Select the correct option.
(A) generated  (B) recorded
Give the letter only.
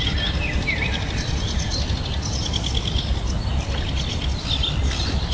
A